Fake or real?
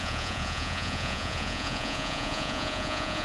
fake